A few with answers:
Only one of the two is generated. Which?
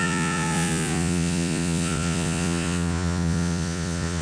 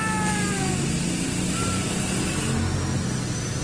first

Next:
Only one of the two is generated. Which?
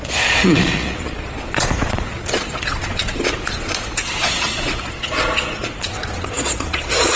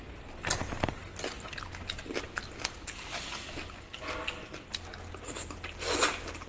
first